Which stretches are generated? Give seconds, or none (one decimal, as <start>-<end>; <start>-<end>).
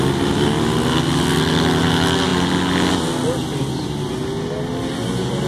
none